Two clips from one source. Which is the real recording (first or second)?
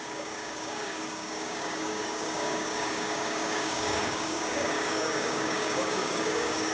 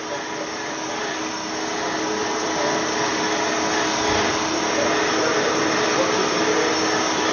second